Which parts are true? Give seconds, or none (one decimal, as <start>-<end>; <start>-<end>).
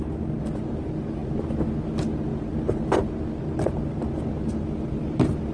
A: 0.0-5.5